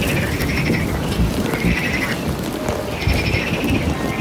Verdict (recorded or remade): recorded